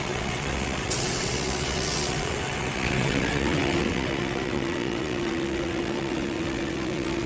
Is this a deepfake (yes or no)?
yes